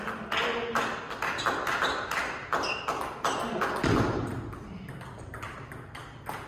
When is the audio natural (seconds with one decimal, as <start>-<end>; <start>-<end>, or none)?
0.0-6.5